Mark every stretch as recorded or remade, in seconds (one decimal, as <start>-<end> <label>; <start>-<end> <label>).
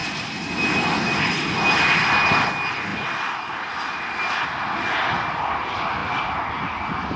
0.0-0.6 remade; 0.6-7.2 recorded